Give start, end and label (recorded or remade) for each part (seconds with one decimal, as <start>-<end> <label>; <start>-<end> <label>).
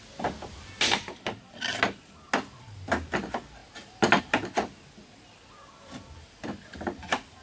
0.0-7.4 recorded